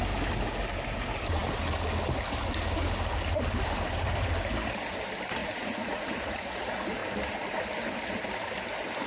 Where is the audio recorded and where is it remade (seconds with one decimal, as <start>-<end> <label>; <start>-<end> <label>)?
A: 0.0-5.4 recorded; 5.4-6.5 remade; 6.5-9.1 recorded